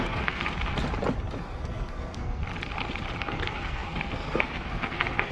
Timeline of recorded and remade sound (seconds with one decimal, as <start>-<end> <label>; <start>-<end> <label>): 0.0-0.4 remade; 0.4-1.4 recorded; 1.4-2.4 remade; 2.4-3.2 recorded; 3.2-5.3 remade